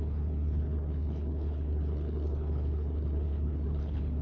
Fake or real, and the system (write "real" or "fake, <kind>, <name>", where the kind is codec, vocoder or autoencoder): fake, codec, HILCodec